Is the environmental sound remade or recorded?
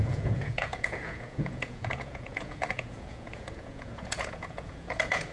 remade